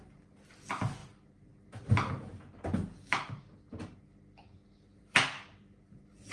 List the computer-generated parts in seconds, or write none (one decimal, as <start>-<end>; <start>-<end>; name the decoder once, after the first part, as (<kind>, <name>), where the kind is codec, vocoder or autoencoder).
none